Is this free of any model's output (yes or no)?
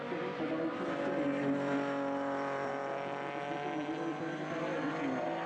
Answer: yes